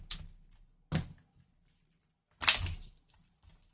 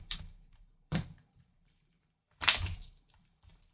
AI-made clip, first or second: second